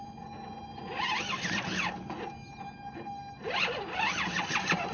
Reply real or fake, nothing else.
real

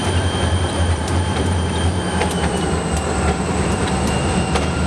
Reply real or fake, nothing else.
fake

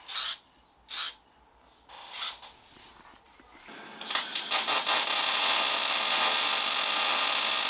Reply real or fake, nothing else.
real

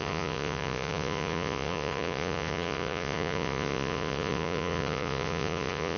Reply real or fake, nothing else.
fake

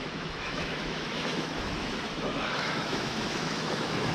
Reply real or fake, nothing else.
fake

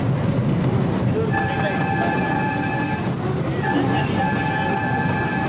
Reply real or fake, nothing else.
real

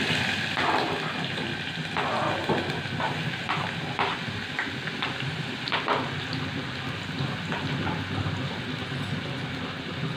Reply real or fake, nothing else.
real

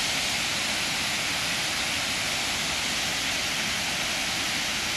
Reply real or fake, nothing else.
real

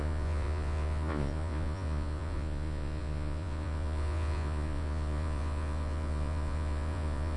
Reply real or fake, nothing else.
fake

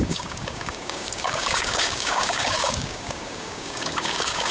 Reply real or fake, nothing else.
fake